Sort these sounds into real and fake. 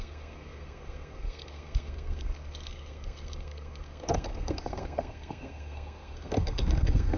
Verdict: fake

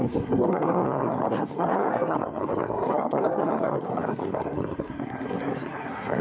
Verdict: fake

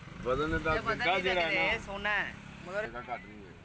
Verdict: real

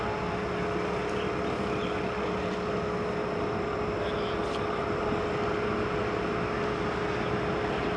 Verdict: real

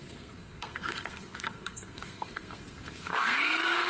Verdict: fake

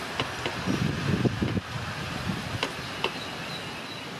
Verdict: real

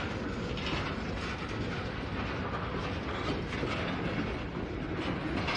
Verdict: real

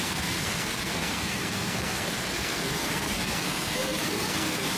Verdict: fake